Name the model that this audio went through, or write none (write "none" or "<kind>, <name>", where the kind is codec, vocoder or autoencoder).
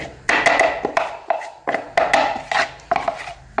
none